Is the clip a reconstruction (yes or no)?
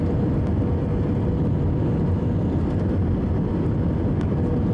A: no